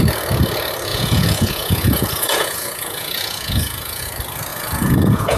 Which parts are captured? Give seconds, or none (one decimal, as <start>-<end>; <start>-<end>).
0.0-0.9; 4.1-4.5